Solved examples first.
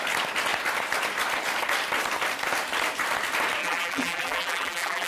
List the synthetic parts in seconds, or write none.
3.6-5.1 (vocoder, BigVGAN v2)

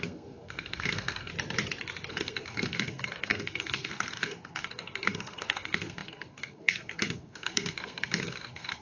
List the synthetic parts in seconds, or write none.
0.0-1.3 (codec, SNAC); 2.1-8.8

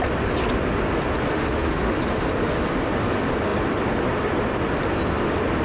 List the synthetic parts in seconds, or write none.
1.3-2.0 (autoencoder, DAC-VAE)

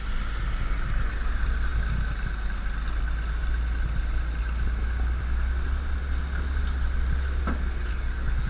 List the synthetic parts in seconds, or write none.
7.9-8.5 (codec, DAC)